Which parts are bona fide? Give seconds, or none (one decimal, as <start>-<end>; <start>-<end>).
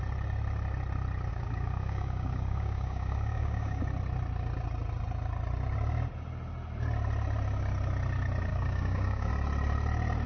0.0-1.3; 3.8-8.5; 9.3-10.3